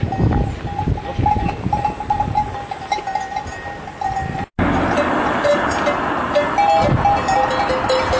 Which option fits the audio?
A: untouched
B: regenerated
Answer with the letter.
A